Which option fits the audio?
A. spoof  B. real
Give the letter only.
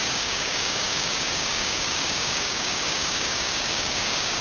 A